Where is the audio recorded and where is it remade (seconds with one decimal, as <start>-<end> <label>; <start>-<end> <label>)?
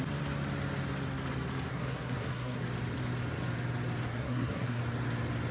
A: 0.0-1.7 recorded; 1.7-2.6 remade; 2.6-4.1 recorded; 4.1-4.8 remade; 4.8-5.5 recorded